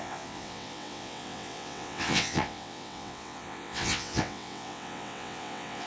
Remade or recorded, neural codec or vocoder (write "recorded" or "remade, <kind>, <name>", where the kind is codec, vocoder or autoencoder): remade, vocoder, WaveNeXt